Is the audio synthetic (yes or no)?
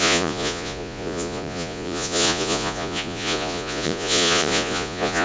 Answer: yes